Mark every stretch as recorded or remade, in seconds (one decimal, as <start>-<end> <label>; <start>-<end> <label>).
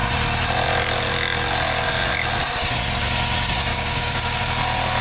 0.0-3.7 recorded; 3.7-4.4 remade; 4.4-5.0 recorded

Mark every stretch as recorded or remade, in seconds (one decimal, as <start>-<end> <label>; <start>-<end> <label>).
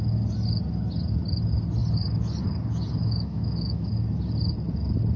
0.0-3.0 recorded; 3.0-3.9 remade; 3.9-5.2 recorded